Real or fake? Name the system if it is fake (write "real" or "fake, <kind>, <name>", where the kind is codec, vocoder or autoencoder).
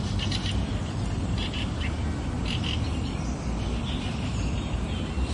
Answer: real